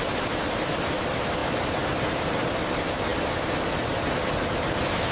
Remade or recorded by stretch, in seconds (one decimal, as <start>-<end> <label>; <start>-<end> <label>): 0.0-5.1 recorded